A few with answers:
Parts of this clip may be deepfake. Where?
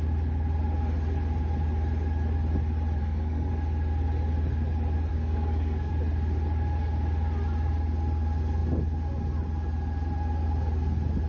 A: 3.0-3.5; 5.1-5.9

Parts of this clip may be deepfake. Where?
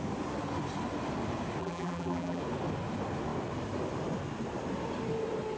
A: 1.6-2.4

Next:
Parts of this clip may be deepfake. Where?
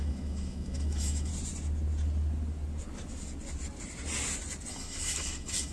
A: 0.0-1.3; 4.7-5.7